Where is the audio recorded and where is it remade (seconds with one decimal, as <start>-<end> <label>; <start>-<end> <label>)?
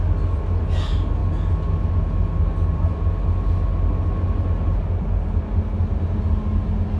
0.0-7.0 recorded